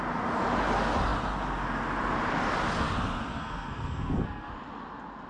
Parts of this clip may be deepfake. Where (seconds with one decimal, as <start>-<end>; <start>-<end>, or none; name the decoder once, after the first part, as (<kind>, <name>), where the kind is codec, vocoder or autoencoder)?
3.3-4.5 (codec, SNAC)